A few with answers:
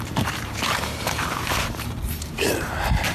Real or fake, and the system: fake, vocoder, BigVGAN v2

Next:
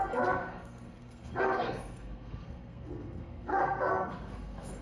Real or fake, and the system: fake, codec, SNAC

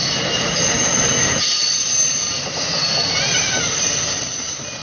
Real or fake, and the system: real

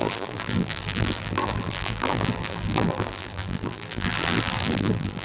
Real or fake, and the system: fake, vocoder, BigVGAN v2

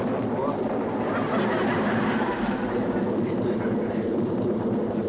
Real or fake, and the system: real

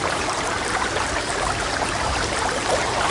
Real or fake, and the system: fake, vocoder, BigVGAN v2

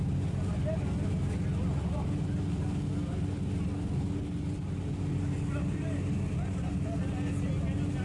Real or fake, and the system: real